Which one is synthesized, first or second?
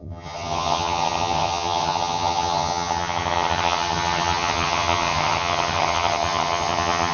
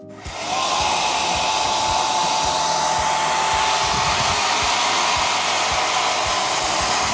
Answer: first